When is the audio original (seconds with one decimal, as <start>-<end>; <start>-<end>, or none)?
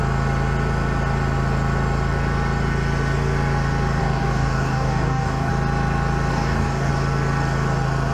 0.0-4.0; 5.5-6.3; 6.9-8.1